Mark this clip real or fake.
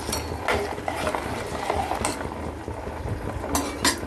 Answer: real